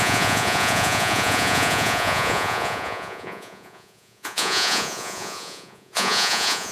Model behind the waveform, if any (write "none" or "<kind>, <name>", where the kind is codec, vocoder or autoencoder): vocoder, Vocos